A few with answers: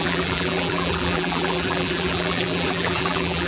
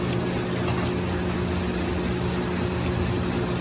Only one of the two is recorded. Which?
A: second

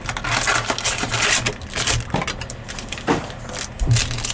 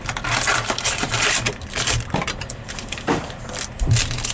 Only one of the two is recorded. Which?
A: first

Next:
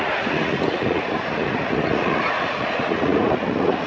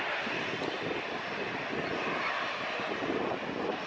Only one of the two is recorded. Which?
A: second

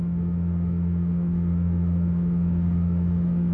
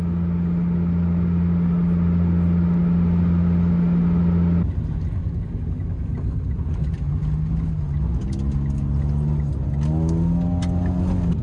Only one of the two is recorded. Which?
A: second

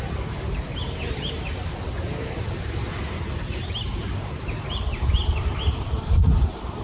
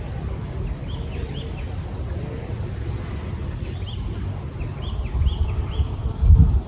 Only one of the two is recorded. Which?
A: second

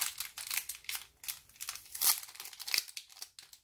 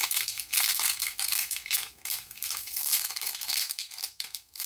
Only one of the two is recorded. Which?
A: first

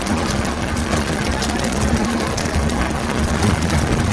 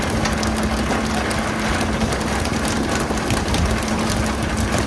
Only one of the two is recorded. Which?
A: second